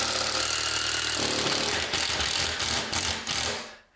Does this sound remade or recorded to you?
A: recorded